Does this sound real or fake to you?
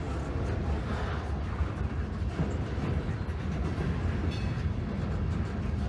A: real